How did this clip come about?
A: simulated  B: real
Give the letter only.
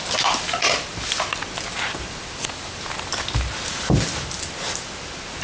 B